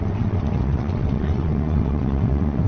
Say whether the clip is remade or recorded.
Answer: remade